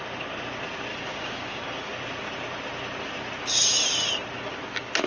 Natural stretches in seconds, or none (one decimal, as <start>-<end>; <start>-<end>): 0.0-0.9; 1.9-5.1